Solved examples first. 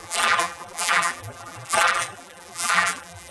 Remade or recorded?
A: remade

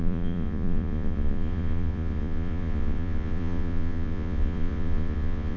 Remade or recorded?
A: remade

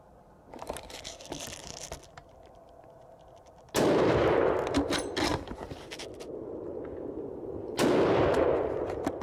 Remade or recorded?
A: recorded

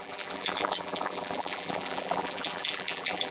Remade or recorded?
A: remade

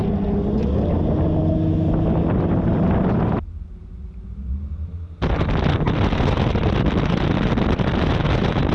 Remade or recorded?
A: recorded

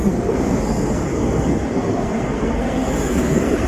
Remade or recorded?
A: remade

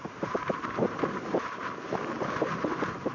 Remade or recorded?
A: remade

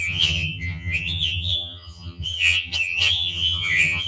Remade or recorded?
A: remade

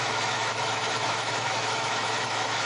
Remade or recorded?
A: remade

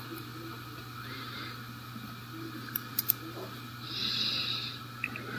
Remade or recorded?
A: recorded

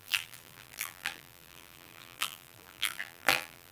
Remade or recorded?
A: remade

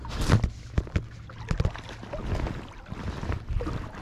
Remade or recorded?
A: recorded